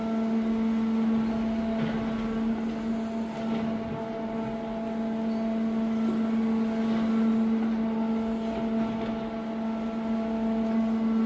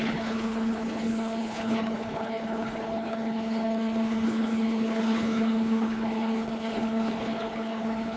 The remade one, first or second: second